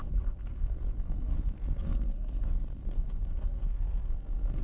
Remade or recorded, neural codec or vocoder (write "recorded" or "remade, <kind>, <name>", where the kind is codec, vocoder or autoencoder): remade, codec, SNAC